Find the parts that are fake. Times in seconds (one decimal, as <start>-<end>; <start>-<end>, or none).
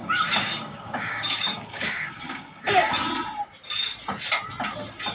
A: 0.0-3.1